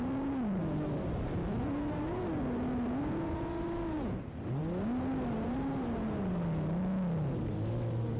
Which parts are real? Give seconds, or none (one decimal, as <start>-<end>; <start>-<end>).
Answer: 0.0-8.2